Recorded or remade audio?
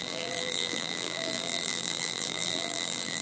remade